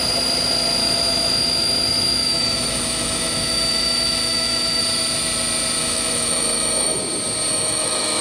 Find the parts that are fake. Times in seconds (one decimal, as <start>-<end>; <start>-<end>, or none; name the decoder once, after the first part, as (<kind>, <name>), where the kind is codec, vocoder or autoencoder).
0.8-4.8 (autoencoder, DAC-VAE); 5.8-7.0; 7.5-8.2